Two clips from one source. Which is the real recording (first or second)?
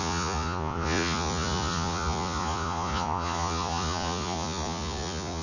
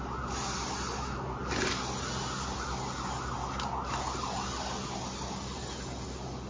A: second